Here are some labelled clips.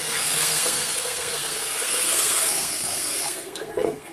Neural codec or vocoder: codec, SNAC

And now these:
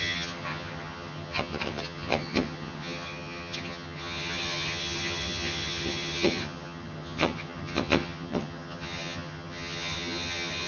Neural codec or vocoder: vocoder, HiFi-GAN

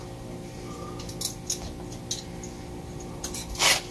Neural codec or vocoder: none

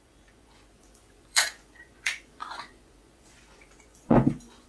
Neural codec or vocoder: vocoder, Vocos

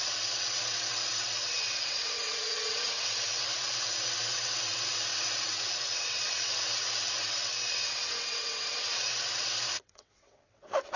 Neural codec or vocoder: vocoder, WaveNeXt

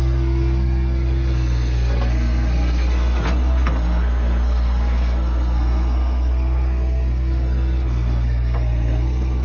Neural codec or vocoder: codec, SNAC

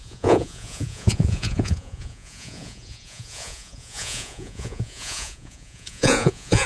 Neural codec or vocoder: vocoder, Vocos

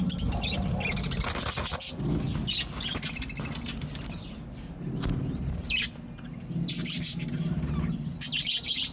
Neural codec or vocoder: none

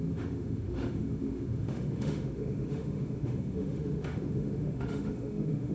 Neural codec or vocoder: autoencoder, DAC-VAE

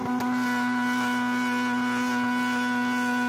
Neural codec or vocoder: none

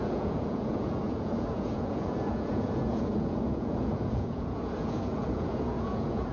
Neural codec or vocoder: vocoder, Vocos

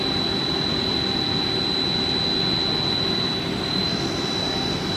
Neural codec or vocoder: none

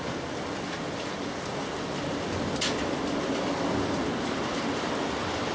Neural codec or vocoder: none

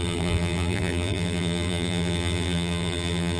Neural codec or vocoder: vocoder, BigVGAN v2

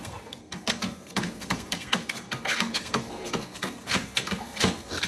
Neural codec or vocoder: codec, SNAC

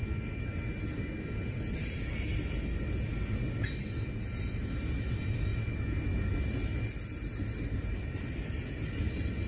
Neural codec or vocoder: none